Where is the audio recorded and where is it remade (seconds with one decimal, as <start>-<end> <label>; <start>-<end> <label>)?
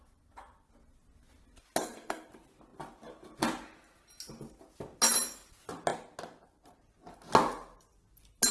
0.0-1.8 recorded; 1.8-2.3 remade; 2.3-8.5 recorded